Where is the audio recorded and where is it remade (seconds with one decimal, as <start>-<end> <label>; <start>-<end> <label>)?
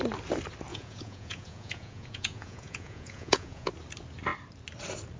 0.0-0.7 recorded; 0.7-3.7 remade; 3.7-5.2 recorded